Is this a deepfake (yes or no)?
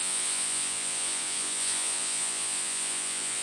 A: yes